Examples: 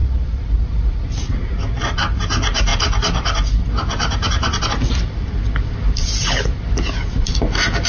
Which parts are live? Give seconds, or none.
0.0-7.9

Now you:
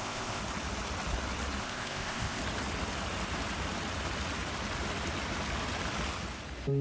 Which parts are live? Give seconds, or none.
0.4-1.6; 2.4-6.8